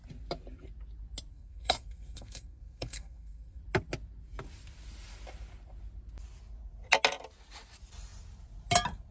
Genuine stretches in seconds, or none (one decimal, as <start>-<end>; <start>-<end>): 0.0-1.3; 3.6-9.1